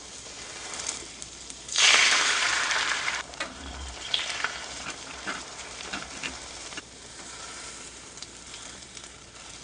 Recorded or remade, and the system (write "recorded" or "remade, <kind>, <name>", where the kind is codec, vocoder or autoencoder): remade, vocoder, BigVGAN v2